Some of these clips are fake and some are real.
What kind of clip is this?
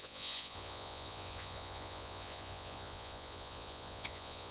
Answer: fake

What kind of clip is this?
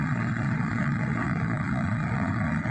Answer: fake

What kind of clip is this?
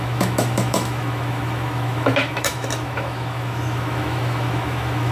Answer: fake